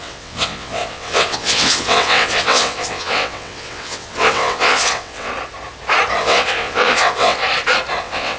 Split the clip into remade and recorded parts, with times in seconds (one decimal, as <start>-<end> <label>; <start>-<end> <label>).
0.0-5.3 remade; 5.3-6.2 recorded; 6.2-7.4 remade; 7.4-8.0 recorded; 8.0-8.4 remade